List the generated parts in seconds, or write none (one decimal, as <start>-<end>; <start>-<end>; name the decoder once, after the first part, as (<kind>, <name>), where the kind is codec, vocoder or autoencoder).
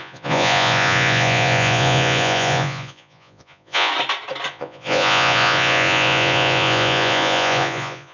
0.0-3.9 (vocoder, Vocos); 4.5-8.1